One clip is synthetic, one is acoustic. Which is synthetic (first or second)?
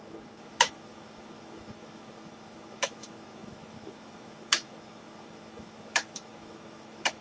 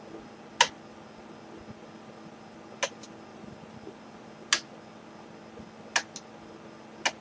first